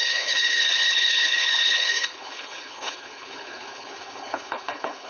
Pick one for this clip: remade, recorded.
remade